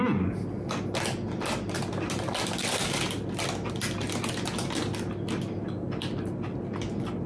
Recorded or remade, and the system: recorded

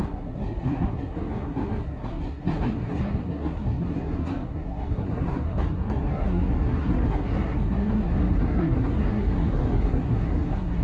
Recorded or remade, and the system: remade, codec, SNAC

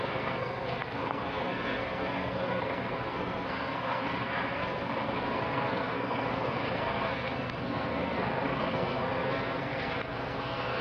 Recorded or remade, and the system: remade, codec, SNAC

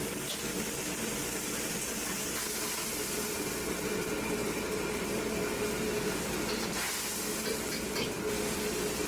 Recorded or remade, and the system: recorded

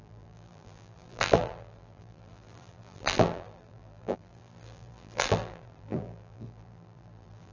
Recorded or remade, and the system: remade, vocoder, BigVGAN v2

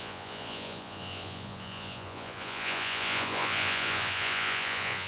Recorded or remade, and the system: remade, vocoder, Vocos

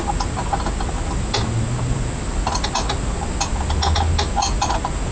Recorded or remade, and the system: recorded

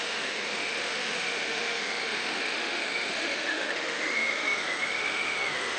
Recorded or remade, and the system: remade, autoencoder, DAC-VAE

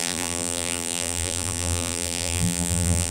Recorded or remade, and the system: remade, vocoder, BigVGAN v2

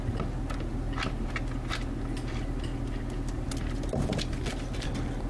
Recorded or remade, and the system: recorded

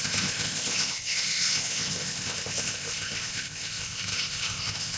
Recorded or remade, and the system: remade, codec, ZipCodec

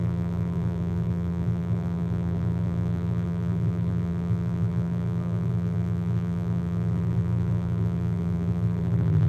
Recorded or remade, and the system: remade, vocoder, BigVGAN v2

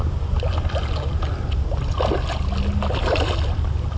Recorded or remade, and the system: recorded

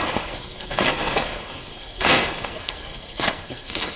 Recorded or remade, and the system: remade, codec, SNAC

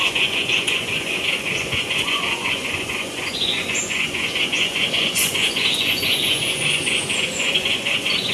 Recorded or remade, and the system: remade, vocoder, Vocos